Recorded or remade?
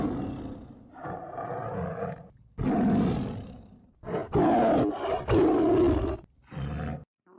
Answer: recorded